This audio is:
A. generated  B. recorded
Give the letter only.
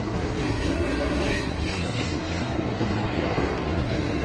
A